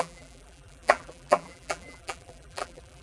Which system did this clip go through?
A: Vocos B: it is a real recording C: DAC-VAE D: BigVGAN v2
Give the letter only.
D